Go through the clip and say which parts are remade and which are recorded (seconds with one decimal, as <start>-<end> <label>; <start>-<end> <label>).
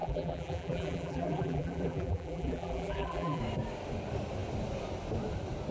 0.0-3.4 remade; 3.4-5.7 recorded